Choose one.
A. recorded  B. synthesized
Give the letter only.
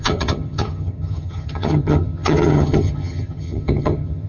B